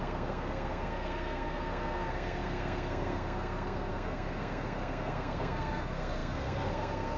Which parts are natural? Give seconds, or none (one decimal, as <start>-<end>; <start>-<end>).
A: none